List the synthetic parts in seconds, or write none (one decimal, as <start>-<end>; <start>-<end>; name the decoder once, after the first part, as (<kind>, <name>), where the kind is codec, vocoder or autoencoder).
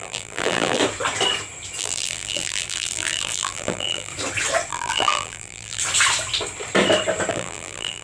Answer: 0.0-0.8 (vocoder, BigVGAN v2); 1.8-4.1; 4.7-5.8; 7.3-8.0